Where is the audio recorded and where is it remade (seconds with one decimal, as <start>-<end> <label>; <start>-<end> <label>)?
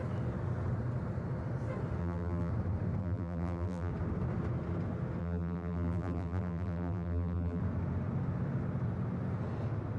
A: 0.0-2.0 recorded; 2.0-2.5 remade; 2.5-3.0 recorded; 3.0-3.9 remade; 3.9-5.2 recorded; 5.2-7.6 remade; 7.6-10.0 recorded